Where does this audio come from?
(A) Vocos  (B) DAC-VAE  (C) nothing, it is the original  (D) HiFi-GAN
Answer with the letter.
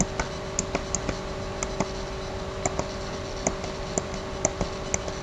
C